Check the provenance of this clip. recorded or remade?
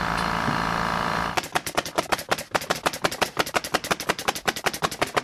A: recorded